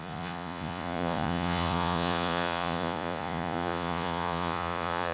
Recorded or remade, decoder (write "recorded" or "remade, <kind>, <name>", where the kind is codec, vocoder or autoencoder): remade, vocoder, Vocos